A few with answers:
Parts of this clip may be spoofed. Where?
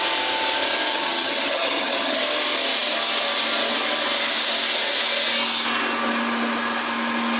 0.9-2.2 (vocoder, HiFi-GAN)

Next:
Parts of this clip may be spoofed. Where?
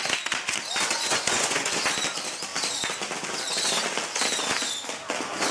0.8-1.8 (vocoder, Vocos)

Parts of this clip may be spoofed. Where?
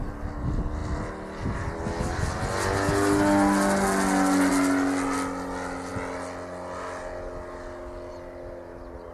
none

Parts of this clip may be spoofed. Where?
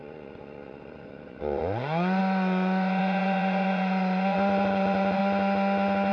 0.0-5.2 (vocoder, Vocos)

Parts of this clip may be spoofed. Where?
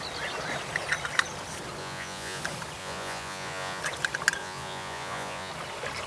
1.8-2.4 (vocoder, Vocos); 2.8-3.8; 4.4-5.5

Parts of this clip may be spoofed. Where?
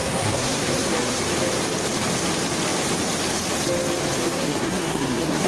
0.0-1.2 (codec, SNAC); 4.2-5.5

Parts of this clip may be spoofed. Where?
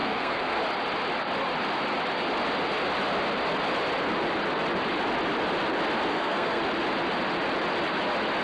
0.0-0.6 (codec, SNAC); 6.1-6.6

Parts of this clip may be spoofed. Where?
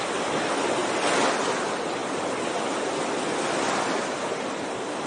2.0-3.0 (vocoder, BigVGAN v2)